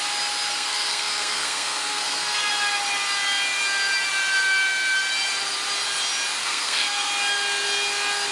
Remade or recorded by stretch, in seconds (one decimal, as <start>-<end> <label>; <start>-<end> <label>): 0.0-0.5 recorded; 0.5-2.5 remade; 2.5-6.4 recorded; 6.4-7.1 remade; 7.1-8.3 recorded